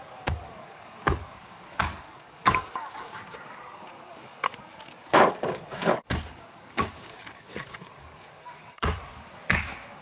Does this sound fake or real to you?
fake